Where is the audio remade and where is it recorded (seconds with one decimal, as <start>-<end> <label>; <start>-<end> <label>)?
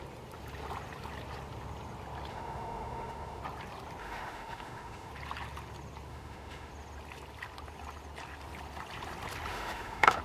0.0-2.3 recorded; 2.3-3.4 remade; 3.4-4.0 recorded; 4.0-5.1 remade; 5.1-6.1 recorded; 6.1-6.7 remade; 6.7-9.5 recorded; 9.5-10.2 remade